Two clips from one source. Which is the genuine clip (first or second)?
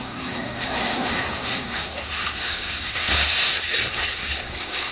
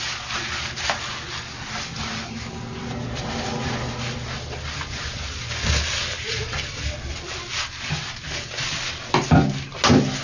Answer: second